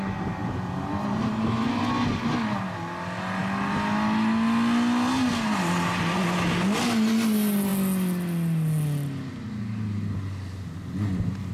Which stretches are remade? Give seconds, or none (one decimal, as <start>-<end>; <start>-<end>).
none